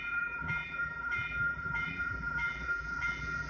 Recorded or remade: remade